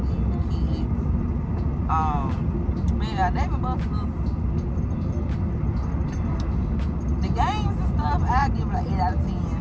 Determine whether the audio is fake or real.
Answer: real